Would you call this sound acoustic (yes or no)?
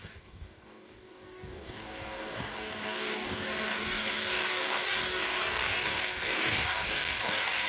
no